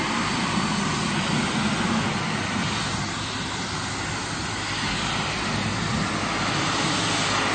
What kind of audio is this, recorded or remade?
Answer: recorded